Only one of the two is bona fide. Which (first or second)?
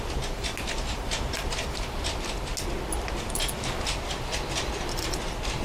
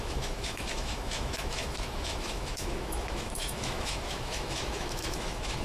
first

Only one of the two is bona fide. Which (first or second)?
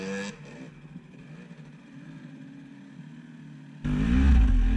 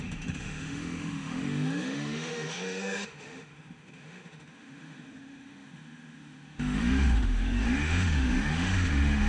first